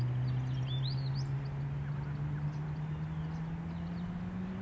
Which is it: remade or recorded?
recorded